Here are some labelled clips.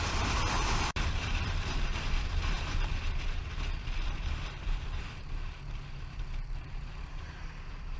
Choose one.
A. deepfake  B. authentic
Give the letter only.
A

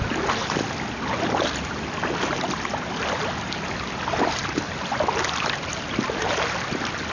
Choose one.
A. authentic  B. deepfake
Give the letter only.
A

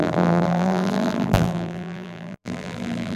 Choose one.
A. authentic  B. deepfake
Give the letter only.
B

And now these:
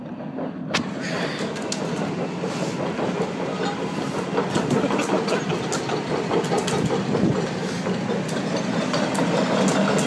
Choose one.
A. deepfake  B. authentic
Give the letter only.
B